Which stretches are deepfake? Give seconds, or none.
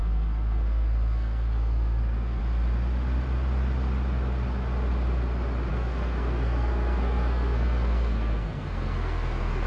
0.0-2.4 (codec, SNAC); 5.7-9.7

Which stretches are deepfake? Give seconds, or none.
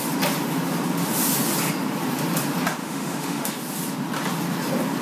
2.8-3.5 (autoencoder, DAC-VAE)